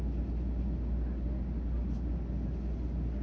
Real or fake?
real